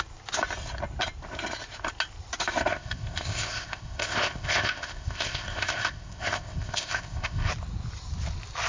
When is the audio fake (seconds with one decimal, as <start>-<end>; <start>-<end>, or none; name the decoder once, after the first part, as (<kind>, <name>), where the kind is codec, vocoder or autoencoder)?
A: 2.7-7.5 (codec, ZipCodec)